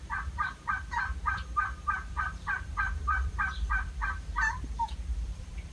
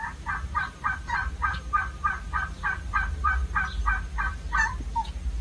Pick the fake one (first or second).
first